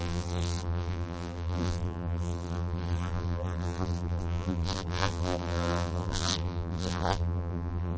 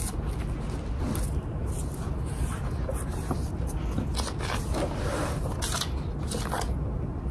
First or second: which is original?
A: second